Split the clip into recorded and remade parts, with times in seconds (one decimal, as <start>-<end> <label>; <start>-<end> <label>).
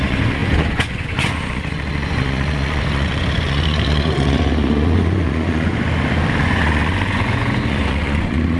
0.0-5.7 remade; 5.7-6.4 recorded; 6.4-8.6 remade